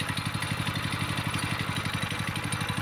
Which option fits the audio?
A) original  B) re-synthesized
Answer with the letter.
A